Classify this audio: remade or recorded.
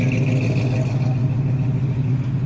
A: recorded